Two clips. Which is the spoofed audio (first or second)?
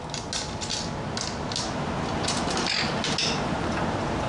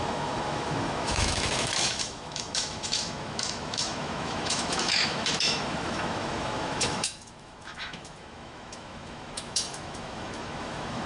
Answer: second